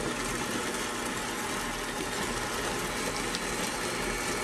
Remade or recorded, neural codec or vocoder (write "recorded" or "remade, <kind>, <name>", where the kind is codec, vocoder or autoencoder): recorded